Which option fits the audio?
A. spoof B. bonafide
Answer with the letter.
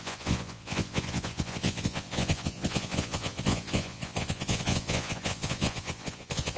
A